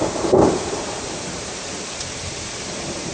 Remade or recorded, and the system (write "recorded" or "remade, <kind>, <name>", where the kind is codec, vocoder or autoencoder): remade, vocoder, BigVGAN v2